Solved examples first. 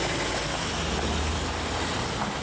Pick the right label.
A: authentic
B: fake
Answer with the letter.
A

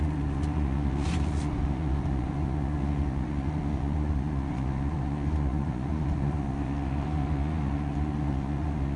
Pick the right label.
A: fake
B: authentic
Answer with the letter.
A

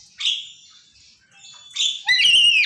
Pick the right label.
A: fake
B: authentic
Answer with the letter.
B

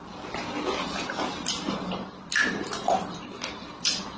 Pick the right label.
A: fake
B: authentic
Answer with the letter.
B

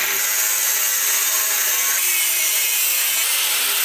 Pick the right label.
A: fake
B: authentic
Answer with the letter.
B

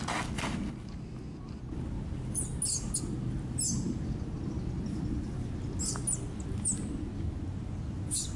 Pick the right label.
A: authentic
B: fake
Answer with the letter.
A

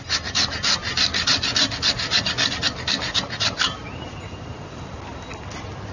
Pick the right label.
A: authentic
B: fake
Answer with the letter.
A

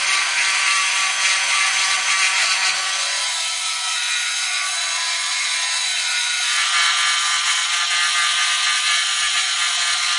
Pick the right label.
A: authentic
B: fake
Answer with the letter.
B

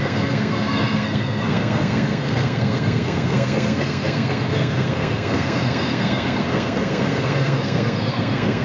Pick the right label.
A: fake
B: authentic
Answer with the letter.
A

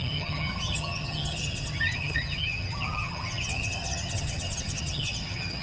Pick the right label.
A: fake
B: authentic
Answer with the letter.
A